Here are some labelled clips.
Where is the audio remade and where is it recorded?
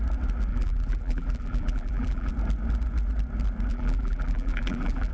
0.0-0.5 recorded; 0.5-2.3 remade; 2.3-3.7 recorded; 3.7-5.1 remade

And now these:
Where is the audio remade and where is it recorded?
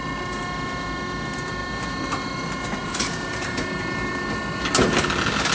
0.0-2.8 recorded; 2.8-4.6 remade; 4.6-5.5 recorded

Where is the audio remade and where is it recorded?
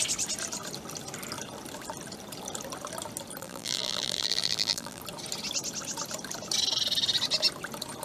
0.0-3.4 recorded; 3.4-5.0 remade; 5.0-8.0 recorded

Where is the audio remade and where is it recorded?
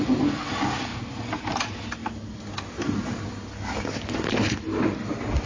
0.0-5.5 recorded